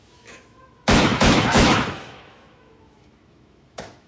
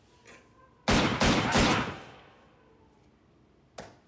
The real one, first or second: second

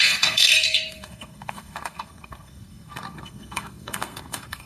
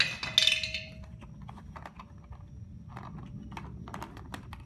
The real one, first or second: second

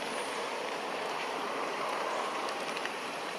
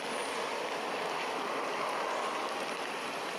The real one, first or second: second